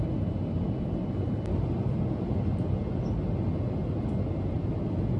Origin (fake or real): real